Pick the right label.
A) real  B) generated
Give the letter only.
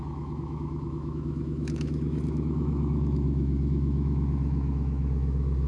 B